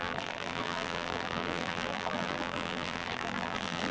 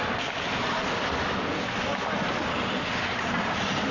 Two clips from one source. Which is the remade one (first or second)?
first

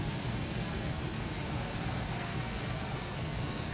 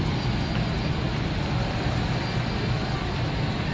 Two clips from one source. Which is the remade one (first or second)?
first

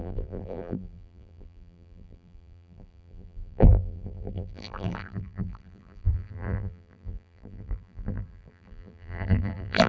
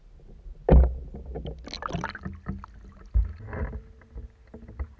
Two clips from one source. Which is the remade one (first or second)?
first